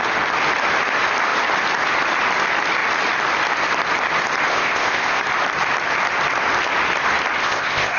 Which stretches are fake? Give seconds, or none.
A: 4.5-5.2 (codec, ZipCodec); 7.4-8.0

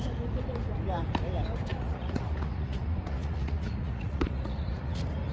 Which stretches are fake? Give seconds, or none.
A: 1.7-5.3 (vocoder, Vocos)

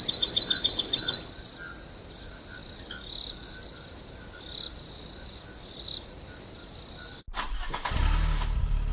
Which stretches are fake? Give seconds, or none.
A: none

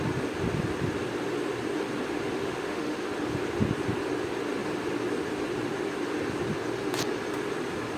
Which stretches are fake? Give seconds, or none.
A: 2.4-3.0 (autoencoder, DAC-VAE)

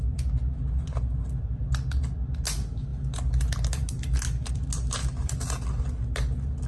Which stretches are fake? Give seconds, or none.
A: none

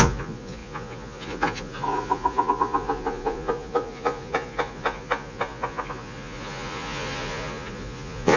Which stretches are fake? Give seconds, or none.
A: 0.0-8.4 (vocoder, Vocos)

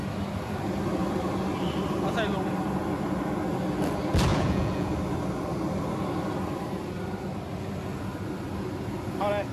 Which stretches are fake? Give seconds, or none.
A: 4.3-4.9 (vocoder, Vocos)

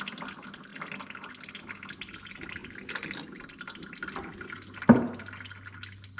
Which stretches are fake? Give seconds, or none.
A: none